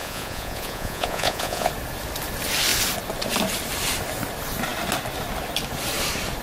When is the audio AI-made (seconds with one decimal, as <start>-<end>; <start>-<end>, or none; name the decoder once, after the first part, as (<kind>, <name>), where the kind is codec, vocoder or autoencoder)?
0.0-1.7 (vocoder, Vocos)